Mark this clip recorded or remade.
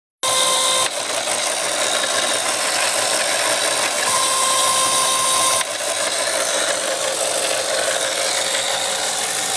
recorded